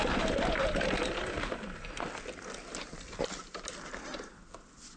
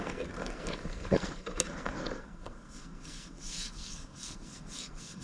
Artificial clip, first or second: second